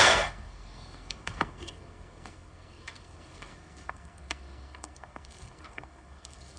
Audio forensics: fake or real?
fake